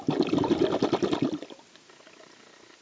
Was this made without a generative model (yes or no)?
yes